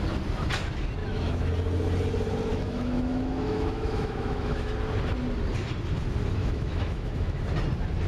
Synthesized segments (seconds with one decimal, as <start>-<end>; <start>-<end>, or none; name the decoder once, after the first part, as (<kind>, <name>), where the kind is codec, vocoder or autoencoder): 1.0-1.5 (autoencoder, DAC-VAE); 2.5-4.7; 6.4-7.4

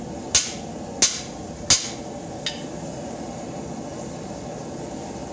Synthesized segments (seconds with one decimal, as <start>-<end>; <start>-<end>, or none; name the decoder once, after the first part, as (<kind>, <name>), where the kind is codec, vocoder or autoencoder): none

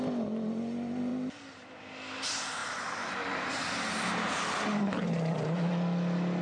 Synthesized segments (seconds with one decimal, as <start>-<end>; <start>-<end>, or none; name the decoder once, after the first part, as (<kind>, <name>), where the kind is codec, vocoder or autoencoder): none

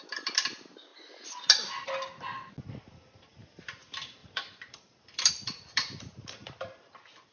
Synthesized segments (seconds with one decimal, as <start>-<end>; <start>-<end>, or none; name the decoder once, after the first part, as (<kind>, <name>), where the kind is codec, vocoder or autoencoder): 0.0-0.9 (vocoder, BigVGAN v2); 2.6-7.3